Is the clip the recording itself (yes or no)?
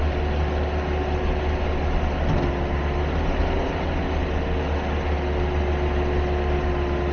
yes